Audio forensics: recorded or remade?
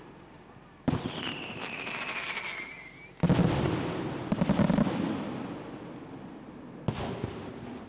recorded